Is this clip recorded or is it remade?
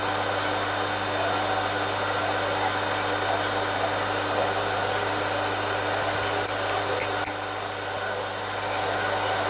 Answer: recorded